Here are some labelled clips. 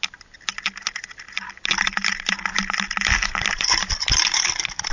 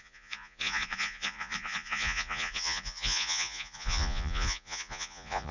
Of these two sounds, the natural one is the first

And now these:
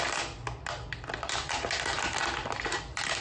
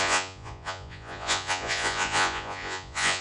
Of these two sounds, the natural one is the first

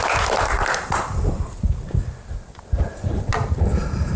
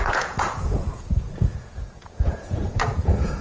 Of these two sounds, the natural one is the first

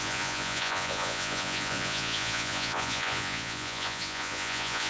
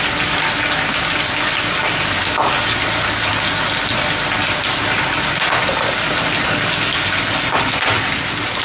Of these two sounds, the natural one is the second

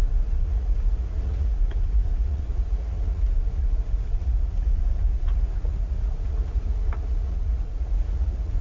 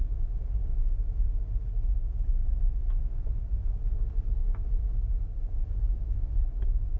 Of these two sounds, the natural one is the second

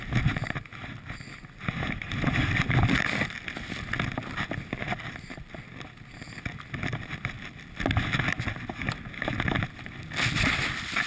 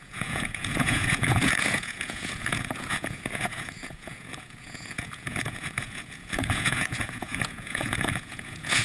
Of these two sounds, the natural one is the first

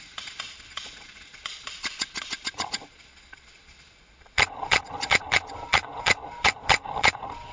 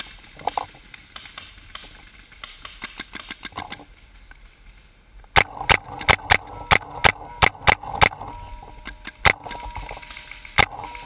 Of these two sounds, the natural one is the second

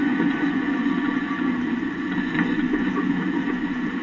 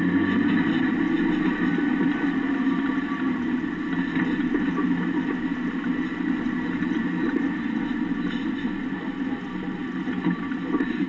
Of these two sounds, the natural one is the second